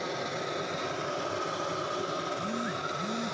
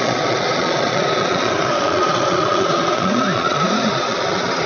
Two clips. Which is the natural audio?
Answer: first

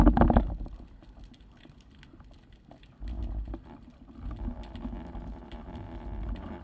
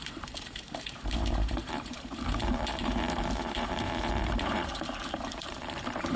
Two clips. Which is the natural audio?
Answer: first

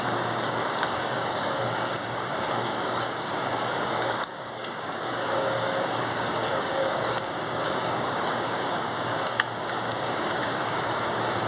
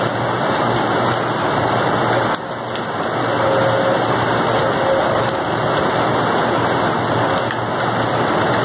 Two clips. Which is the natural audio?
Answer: second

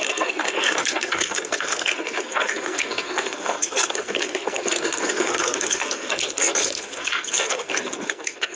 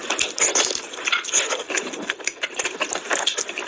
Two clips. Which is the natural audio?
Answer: second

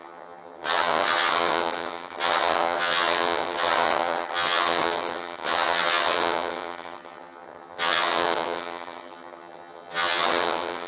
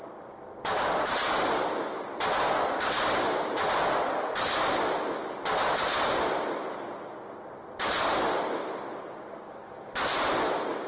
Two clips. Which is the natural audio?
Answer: second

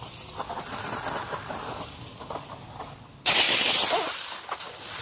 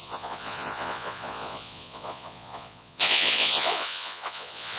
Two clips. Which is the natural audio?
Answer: first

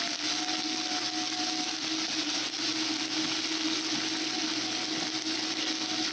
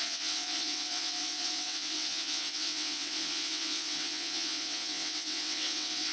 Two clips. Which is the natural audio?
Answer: first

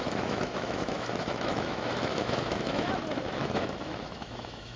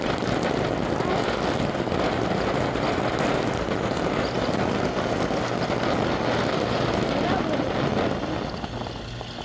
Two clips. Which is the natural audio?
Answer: second